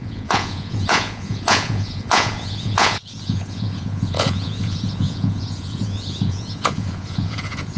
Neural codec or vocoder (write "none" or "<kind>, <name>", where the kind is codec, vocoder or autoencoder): vocoder, Vocos